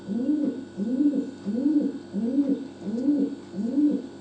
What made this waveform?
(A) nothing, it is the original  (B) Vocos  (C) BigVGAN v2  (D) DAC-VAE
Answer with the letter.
A